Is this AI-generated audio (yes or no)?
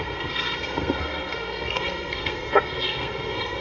yes